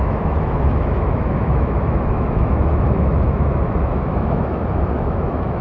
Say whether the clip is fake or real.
fake